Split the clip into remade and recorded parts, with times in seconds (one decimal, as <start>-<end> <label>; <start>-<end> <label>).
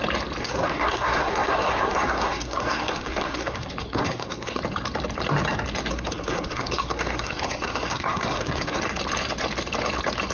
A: 0.0-0.4 recorded; 0.4-4.6 remade; 4.6-5.9 recorded; 5.9-8.8 remade; 8.8-10.3 recorded